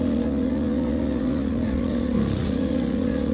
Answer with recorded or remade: remade